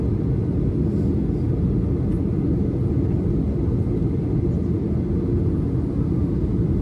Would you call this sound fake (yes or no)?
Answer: no